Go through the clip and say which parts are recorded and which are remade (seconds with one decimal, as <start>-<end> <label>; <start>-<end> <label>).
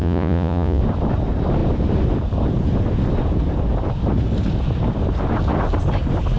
0.0-0.8 remade; 0.8-6.4 recorded